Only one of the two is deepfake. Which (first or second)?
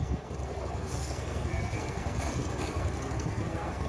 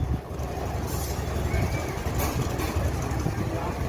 first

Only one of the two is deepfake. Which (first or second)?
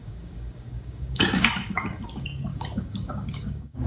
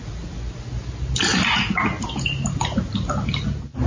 first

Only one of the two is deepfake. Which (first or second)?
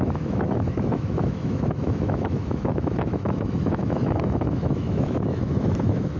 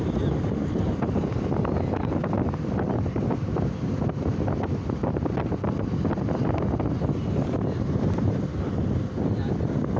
first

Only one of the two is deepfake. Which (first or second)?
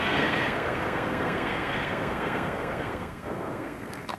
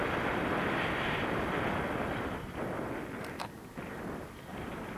first